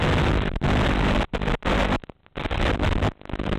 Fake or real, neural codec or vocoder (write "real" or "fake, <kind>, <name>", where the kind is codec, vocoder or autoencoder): real